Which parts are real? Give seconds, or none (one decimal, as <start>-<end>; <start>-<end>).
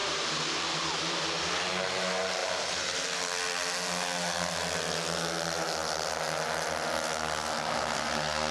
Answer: 1.4-2.4; 3.2-8.5